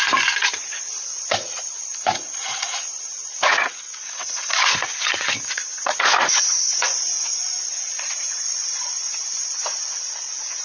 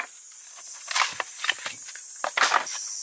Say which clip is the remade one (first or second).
first